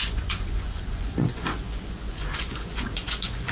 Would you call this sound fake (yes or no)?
yes